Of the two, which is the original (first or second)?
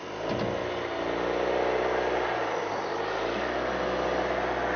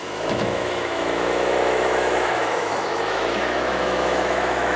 first